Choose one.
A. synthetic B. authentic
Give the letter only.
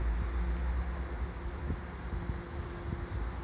B